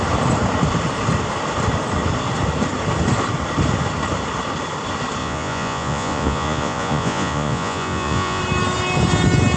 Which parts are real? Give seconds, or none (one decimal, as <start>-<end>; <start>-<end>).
0.0-5.2; 8.4-9.6